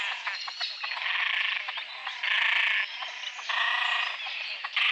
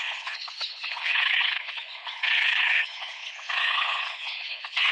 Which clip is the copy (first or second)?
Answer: second